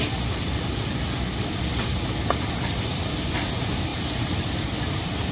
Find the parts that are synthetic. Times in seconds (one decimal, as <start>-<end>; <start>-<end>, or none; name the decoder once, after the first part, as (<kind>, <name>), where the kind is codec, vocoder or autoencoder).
3.9-4.5 (vocoder, BigVGAN v2)